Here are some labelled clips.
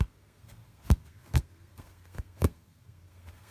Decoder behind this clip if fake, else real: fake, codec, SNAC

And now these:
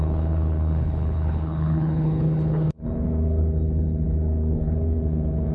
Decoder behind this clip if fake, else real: fake, codec, HILCodec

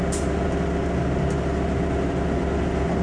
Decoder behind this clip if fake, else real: real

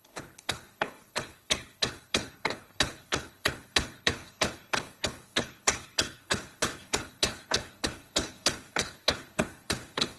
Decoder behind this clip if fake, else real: fake, codec, HILCodec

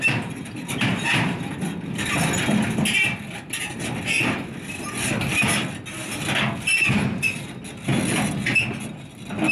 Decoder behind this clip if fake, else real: real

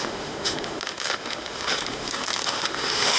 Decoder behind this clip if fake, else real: fake, autoencoder, DAC-VAE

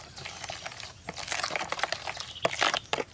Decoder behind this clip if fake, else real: real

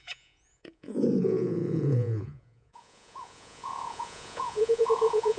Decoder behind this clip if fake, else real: fake, vocoder, Vocos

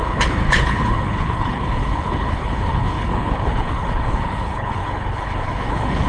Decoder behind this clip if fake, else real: fake, codec, HILCodec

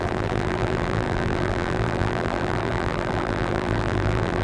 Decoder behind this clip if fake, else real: fake, vocoder, BigVGAN v2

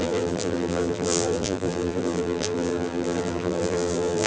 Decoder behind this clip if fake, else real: fake, vocoder, BigVGAN v2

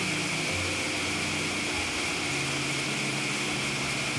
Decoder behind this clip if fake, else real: real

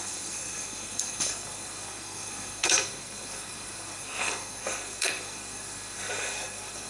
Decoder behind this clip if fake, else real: fake, codec, SNAC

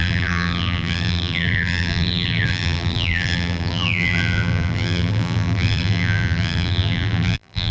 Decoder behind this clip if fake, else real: fake, vocoder, BigVGAN v2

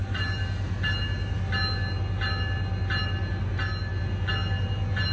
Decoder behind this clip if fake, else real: real